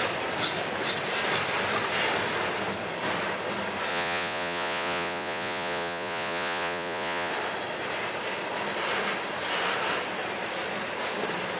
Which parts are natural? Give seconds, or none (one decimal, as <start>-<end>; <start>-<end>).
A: 0.0-3.9; 7.3-11.6